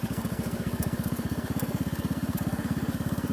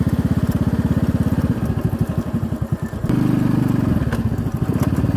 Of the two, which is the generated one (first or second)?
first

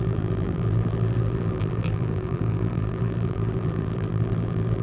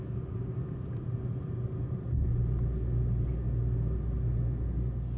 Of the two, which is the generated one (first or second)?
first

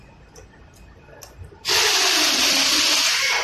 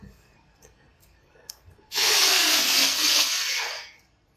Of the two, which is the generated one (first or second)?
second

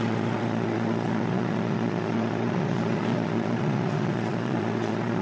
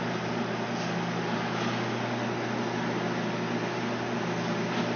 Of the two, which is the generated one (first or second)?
first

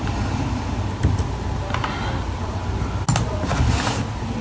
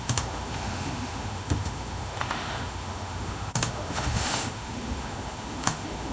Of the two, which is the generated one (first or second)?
second